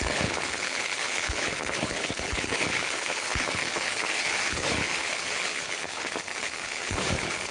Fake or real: fake